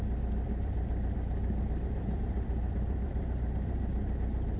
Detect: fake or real fake